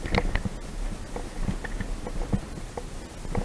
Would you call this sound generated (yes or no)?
no